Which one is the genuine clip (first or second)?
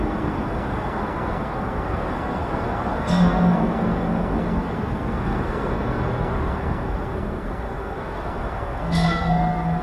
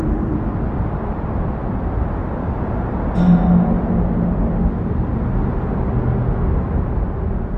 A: second